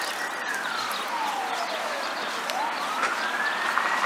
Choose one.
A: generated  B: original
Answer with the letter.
B